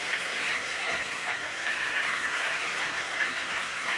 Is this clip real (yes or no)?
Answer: no